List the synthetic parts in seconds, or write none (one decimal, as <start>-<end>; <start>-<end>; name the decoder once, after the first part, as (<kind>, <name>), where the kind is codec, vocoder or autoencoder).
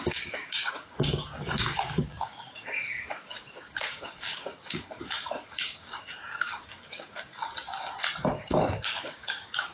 0.0-7.3 (codec, DAC); 8.3-9.7